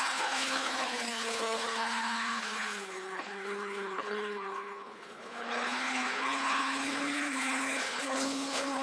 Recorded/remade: remade